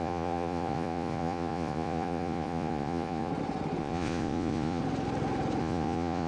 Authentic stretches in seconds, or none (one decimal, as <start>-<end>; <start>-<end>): 3.3-3.8; 4.8-5.6